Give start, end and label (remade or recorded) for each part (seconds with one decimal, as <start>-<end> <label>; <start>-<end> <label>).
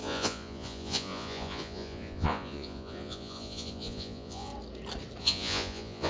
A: 0.0-4.5 remade; 4.5-5.2 recorded; 5.2-6.1 remade